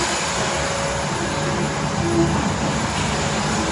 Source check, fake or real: real